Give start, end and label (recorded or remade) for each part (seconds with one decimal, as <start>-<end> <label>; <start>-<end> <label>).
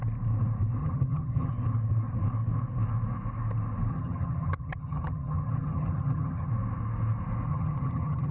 0.0-0.8 recorded; 0.8-1.5 remade; 1.5-3.9 recorded; 3.9-6.5 remade; 6.5-7.5 recorded; 7.5-8.3 remade